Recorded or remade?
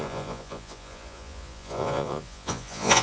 remade